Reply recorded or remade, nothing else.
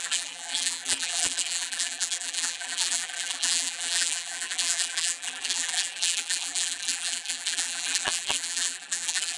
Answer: remade